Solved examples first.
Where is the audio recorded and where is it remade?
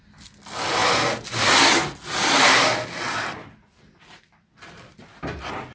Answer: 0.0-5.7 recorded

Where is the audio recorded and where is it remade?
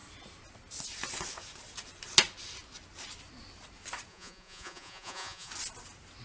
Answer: 0.0-4.1 recorded; 4.1-5.5 remade; 5.5-6.2 recorded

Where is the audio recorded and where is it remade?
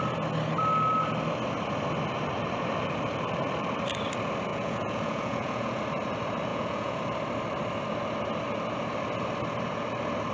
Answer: 0.0-4.5 recorded; 4.5-5.8 remade; 5.8-6.5 recorded; 6.5-7.0 remade; 7.0-10.3 recorded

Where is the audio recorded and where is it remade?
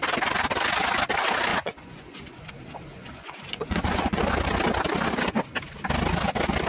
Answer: 0.0-1.5 recorded; 1.5-2.5 remade; 2.5-2.9 recorded; 2.9-4.2 remade; 4.2-6.7 recorded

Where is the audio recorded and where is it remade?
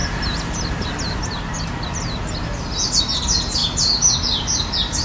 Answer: 0.0-5.0 recorded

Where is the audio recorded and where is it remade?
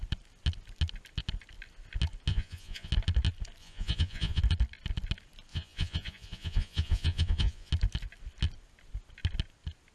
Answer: 0.0-2.3 recorded; 2.3-2.9 remade; 2.9-3.6 recorded; 3.6-4.4 remade; 4.4-5.5 recorded; 5.5-7.7 remade; 7.7-9.9 recorded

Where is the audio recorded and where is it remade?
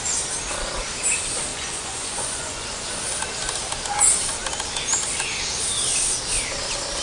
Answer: 0.0-1.5 recorded; 1.5-2.9 remade; 2.9-7.0 recorded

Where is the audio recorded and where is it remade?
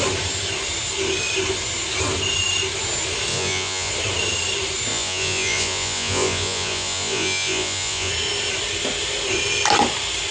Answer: 0.0-3.3 recorded; 3.3-3.9 remade; 3.9-4.9 recorded; 4.9-8.1 remade; 8.1-10.3 recorded